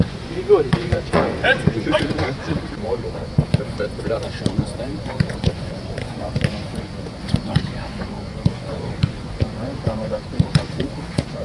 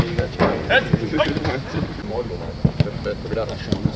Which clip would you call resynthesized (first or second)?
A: first